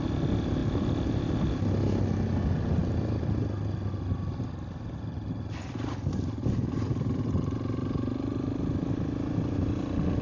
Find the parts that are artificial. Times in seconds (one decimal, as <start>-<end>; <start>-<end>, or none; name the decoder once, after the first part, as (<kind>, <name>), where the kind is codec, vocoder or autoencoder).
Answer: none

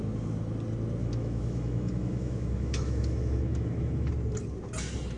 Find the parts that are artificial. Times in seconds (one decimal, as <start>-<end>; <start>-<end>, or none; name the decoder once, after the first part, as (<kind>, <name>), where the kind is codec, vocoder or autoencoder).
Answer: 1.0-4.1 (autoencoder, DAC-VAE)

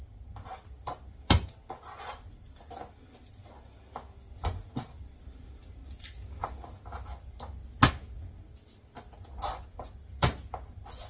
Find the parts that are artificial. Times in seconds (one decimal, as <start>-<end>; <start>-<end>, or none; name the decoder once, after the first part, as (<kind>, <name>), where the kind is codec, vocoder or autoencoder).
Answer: none

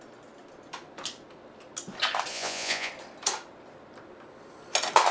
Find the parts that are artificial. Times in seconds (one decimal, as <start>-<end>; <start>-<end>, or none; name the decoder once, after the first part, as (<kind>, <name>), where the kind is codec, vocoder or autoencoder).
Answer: 2.3-2.9 (vocoder, Vocos)

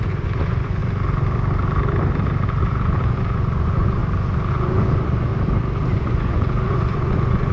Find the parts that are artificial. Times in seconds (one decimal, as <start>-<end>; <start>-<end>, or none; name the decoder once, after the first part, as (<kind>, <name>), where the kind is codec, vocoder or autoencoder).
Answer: 0.0-0.8 (vocoder, Vocos); 2.6-4.0; 4.5-5.3; 6.0-7.5